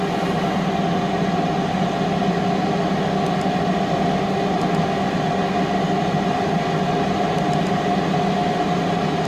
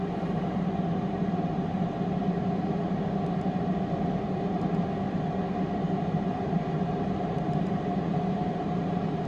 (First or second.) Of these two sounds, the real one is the first